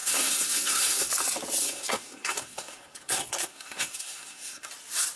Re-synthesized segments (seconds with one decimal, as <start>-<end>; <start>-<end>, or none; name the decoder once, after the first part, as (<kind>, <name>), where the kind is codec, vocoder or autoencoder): 0.0-1.1 (codec, SNAC); 1.6-4.7